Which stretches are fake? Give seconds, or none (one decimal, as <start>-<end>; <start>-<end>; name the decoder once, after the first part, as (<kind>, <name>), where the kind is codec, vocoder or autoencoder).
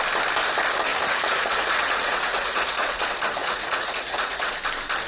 0.9-3.0 (vocoder, Vocos); 3.4-4.5